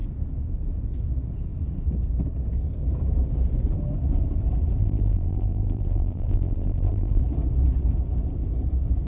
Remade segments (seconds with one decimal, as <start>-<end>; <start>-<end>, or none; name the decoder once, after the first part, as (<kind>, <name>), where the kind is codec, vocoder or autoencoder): 4.8-7.2 (vocoder, BigVGAN v2)